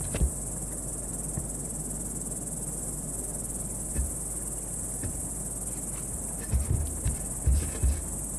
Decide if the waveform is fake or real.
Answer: real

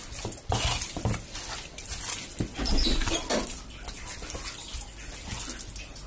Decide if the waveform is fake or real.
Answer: real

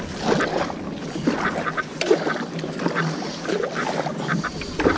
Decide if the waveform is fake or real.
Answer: real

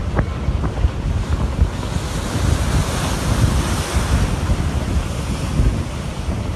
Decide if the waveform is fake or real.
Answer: real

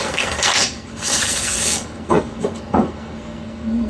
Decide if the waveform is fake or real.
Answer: fake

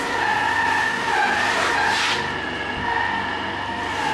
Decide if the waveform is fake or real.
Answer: real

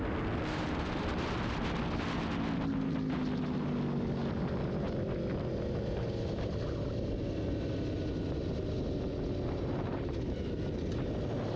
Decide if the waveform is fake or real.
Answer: real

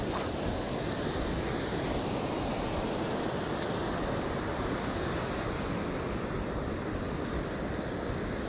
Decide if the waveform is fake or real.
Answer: real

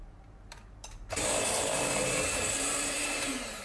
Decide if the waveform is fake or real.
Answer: fake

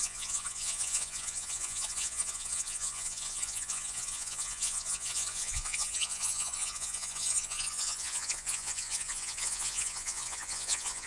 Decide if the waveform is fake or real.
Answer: fake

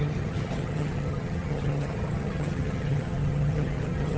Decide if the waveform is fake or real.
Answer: fake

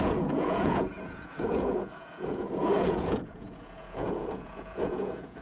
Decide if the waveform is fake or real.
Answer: fake